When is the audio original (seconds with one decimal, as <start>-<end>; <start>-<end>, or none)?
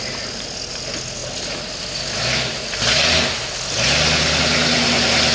0.0-5.3